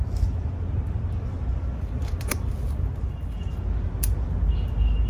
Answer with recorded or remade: recorded